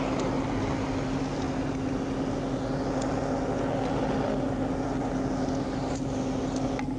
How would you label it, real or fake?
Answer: real